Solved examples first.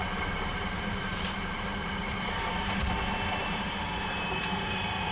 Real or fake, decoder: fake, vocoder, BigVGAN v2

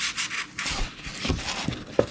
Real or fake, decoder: fake, vocoder, BigVGAN v2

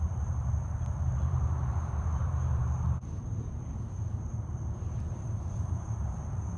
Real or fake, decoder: fake, vocoder, BigVGAN v2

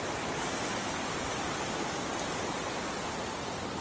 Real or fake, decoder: real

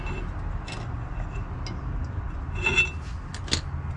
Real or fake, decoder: real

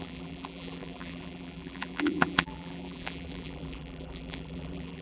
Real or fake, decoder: fake, vocoder, BigVGAN v2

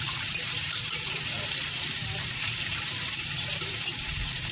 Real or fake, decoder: fake, vocoder, BigVGAN v2